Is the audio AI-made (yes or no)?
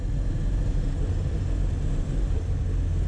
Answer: no